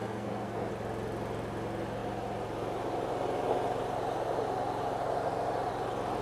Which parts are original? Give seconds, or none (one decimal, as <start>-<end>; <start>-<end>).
0.7-6.2